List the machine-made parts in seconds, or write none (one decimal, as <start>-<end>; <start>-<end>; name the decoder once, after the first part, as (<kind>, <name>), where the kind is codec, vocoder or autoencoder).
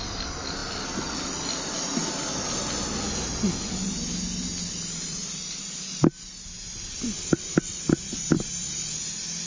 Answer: none